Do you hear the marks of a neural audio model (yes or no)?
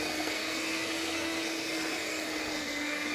yes